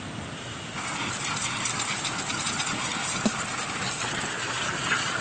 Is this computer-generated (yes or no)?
no